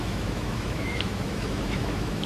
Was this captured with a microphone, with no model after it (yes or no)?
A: no